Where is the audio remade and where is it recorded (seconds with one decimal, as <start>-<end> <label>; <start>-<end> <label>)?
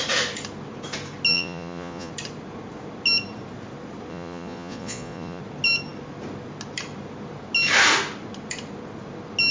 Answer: 0.0-1.3 recorded; 1.3-2.1 remade; 2.1-4.1 recorded; 4.1-5.4 remade; 5.4-9.5 recorded